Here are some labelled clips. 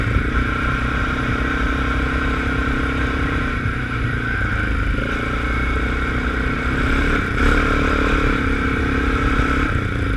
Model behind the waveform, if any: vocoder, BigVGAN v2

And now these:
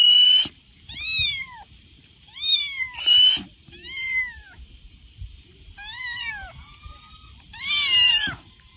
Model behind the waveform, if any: vocoder, BigVGAN v2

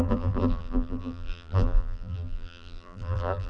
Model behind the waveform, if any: vocoder, BigVGAN v2